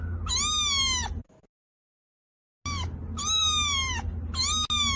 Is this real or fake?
real